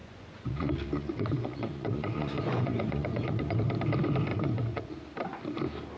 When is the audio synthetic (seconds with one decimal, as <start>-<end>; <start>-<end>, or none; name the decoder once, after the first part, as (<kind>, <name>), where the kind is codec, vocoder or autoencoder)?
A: 0.0-3.6 (vocoder, Vocos); 4.3-4.9